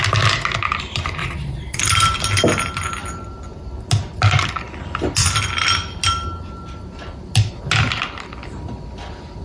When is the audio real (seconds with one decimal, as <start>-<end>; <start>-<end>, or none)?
0.0-1.2; 1.8-9.4